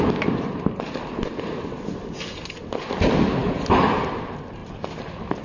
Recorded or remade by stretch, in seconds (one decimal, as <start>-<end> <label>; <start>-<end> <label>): 0.0-5.4 recorded